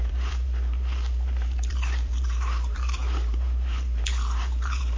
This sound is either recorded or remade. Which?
remade